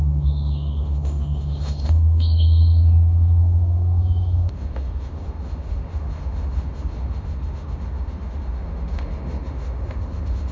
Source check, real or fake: fake